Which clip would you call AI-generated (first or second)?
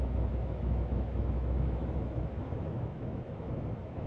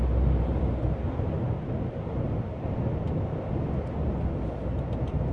first